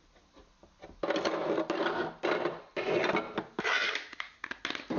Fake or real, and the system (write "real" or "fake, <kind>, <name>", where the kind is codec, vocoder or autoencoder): real